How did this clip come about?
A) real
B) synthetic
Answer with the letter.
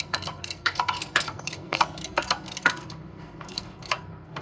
B